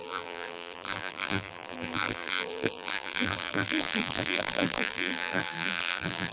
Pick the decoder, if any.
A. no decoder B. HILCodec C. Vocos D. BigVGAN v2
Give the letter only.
D